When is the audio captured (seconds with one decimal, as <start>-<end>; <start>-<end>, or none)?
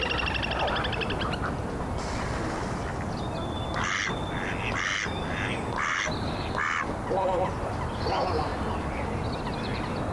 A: 0.0-10.1